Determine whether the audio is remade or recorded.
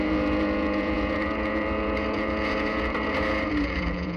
remade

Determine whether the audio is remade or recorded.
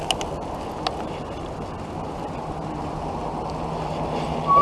recorded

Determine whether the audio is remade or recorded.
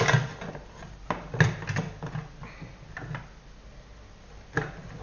recorded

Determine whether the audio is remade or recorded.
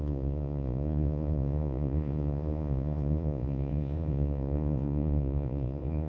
remade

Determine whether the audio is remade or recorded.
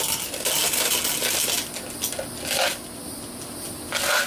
recorded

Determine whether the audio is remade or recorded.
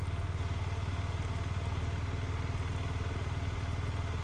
recorded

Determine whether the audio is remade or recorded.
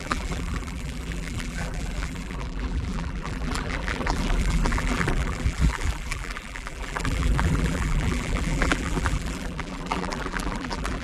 remade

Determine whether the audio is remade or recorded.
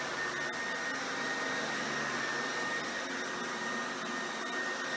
recorded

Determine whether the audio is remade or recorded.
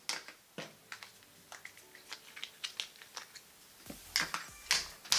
recorded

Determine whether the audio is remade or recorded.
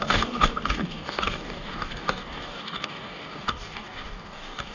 remade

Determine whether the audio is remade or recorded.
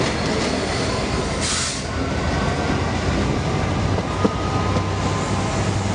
recorded